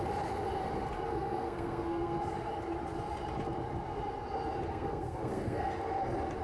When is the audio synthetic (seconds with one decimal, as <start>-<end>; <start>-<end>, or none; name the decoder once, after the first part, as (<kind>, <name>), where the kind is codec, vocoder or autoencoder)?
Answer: 1.1-2.2 (codec, SNAC); 4.7-5.7